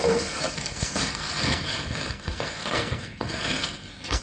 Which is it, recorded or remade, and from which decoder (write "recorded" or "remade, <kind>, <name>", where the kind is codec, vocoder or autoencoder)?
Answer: remade, codec, SNAC